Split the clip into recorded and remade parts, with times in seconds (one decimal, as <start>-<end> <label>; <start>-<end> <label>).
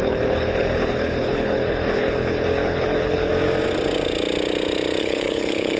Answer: 0.0-3.3 remade; 3.3-5.0 recorded; 5.0-5.8 remade